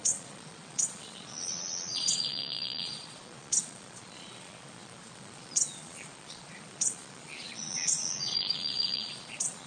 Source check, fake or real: fake